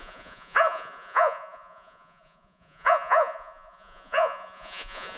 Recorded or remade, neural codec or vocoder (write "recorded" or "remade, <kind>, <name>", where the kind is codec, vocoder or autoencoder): remade, vocoder, Vocos